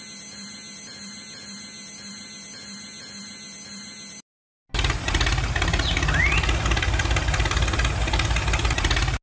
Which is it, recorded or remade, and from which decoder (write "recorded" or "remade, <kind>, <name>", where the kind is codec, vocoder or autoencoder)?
recorded